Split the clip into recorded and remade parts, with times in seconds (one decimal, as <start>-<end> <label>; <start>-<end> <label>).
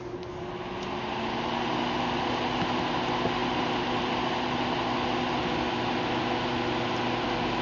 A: 0.0-3.4 recorded; 3.4-4.6 remade; 4.6-7.6 recorded